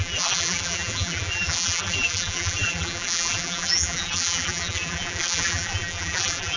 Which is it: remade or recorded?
remade